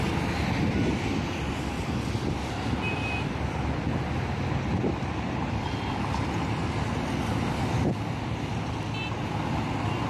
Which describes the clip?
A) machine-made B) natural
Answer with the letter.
B